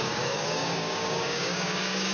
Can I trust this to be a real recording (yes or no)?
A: no